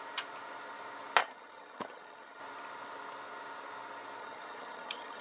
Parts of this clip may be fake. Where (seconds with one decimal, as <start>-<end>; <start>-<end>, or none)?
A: 1.2-2.4; 4.2-5.2